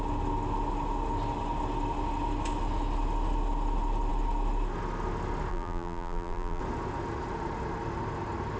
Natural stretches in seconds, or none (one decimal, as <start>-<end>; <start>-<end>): 0.0-5.5; 6.6-8.6